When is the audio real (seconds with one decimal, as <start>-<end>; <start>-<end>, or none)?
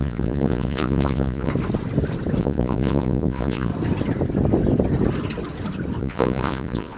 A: 1.5-2.4; 3.7-6.0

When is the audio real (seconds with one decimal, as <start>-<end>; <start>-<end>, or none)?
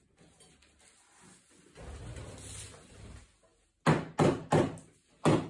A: 0.0-5.5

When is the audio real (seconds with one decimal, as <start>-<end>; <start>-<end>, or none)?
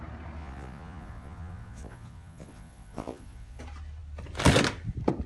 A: 0.0-0.4; 3.6-5.3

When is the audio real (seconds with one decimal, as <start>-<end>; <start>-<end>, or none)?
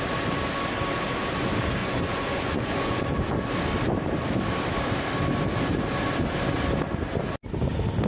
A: 0.0-1.8; 3.0-8.1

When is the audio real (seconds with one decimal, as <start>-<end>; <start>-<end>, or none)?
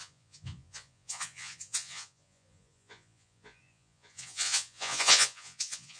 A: none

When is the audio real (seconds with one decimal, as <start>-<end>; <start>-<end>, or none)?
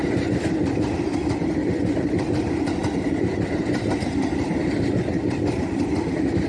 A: 0.0-6.5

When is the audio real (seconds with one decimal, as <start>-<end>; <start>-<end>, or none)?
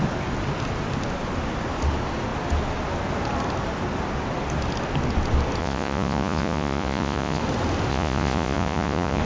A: 0.0-5.6; 7.4-7.9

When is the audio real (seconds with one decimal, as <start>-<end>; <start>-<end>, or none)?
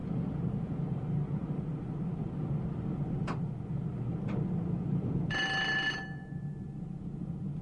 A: 0.0-7.6